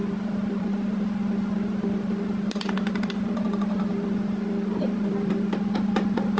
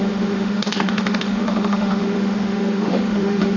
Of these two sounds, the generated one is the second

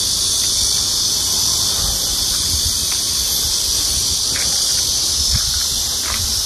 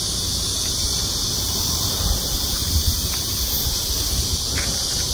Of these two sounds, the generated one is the second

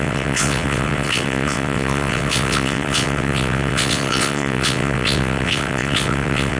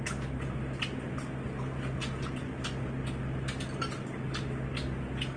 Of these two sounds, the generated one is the first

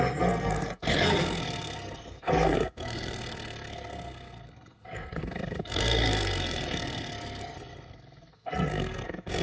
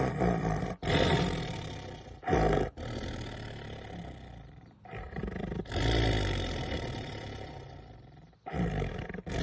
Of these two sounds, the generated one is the first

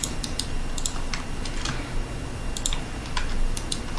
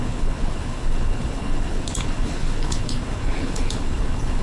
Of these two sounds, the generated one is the second